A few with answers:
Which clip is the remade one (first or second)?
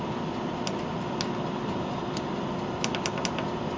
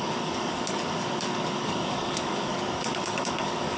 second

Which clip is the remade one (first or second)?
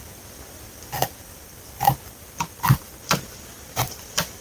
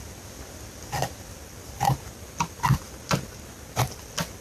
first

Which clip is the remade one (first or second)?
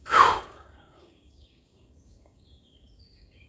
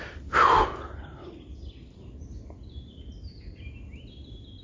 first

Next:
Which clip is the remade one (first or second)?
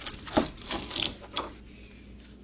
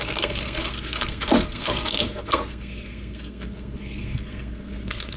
second